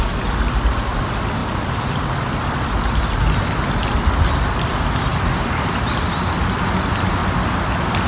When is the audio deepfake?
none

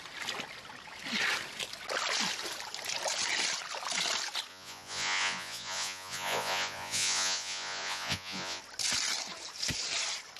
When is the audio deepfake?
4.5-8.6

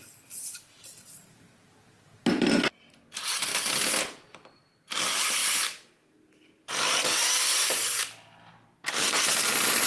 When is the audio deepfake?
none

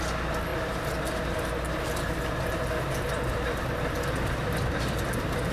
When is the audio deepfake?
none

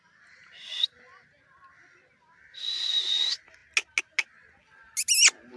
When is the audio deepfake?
none

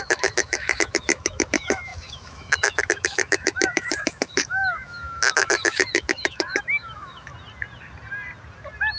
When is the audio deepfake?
0.0-7.3

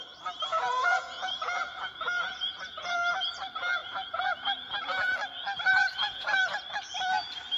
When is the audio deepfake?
0.5-2.9; 3.8-5.1; 5.7-6.6

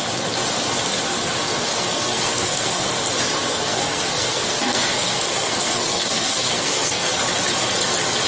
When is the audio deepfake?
1.7-2.9; 3.5-7.2